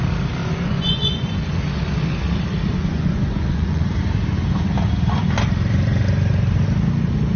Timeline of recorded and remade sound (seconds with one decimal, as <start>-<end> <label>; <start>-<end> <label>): 0.0-0.4 recorded; 0.4-1.6 remade; 1.6-2.7 recorded; 2.7-3.9 remade; 3.9-7.4 recorded